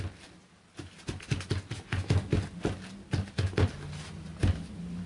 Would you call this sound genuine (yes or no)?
yes